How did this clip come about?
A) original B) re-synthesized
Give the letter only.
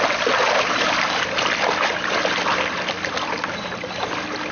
A